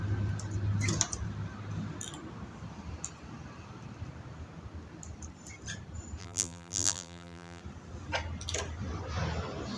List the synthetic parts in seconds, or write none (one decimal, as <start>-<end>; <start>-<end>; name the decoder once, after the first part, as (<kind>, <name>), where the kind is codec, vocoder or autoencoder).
6.2-7.6 (vocoder, BigVGAN v2)